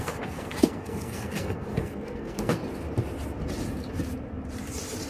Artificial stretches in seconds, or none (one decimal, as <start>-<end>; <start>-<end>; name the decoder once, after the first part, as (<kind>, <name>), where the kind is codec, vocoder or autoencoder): 0.0-2.6 (codec, SNAC)